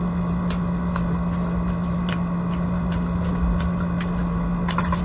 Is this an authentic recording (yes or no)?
yes